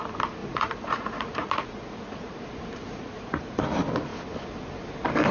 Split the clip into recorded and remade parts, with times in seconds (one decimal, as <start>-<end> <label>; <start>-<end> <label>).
0.0-0.4 recorded; 0.4-3.6 remade; 3.6-5.3 recorded